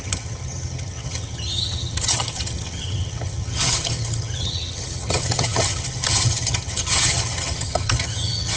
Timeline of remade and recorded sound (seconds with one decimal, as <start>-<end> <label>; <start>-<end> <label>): 0.0-8.6 remade